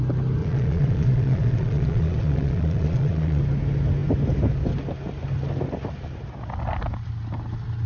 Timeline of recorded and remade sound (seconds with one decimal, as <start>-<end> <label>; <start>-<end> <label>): 0.0-0.4 recorded; 0.4-3.4 remade; 3.4-7.9 recorded